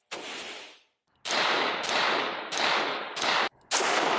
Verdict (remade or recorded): recorded